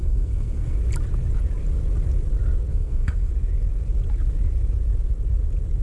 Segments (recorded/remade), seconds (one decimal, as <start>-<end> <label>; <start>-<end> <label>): 0.0-0.8 remade; 0.8-2.7 recorded; 2.7-3.3 remade; 3.3-5.8 recorded